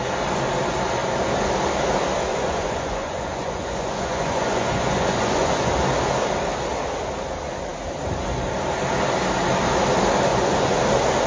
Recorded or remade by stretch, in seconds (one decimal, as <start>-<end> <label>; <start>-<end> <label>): 0.0-2.3 recorded; 2.3-5.7 remade; 5.7-10.3 recorded; 10.3-10.8 remade; 10.8-11.3 recorded